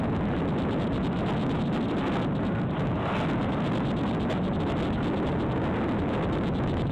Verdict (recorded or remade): recorded